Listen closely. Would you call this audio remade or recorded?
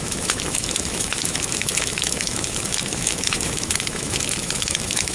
remade